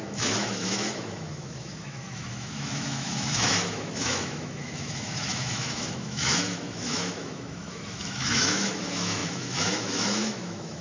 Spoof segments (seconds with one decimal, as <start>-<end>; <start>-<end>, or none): 0.0-10.8